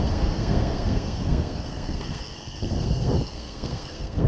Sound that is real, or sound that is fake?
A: fake